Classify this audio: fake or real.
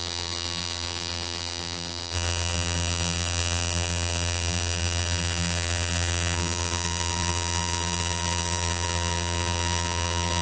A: fake